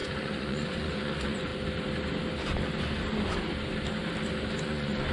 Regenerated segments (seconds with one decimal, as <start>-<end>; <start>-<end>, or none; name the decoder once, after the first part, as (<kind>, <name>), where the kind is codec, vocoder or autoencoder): 0.0-1.5 (vocoder, Vocos); 4.6-5.1